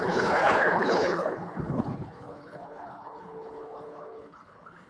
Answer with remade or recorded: remade